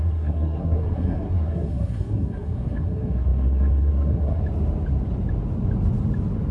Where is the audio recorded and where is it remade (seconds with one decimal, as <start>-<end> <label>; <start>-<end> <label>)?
0.0-4.4 remade; 4.4-6.5 recorded